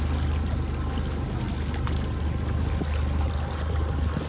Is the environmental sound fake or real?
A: real